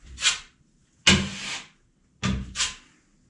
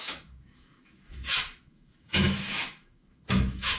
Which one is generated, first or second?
second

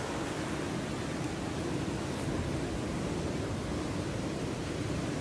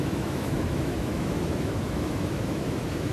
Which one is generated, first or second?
second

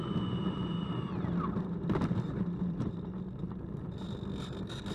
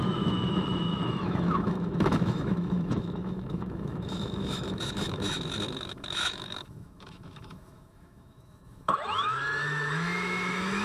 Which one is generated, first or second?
second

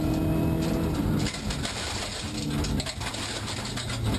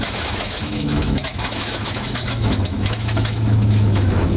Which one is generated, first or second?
second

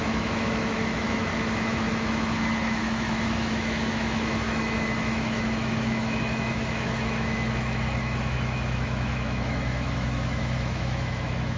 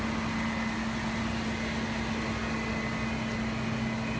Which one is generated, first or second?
first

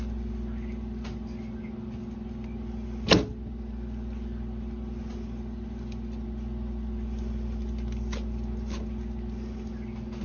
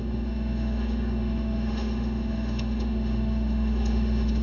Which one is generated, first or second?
second